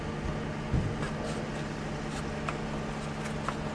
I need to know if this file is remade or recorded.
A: recorded